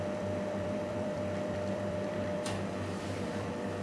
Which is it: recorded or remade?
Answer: remade